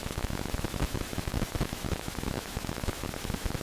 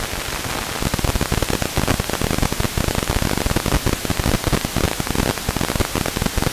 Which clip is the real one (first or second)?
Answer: second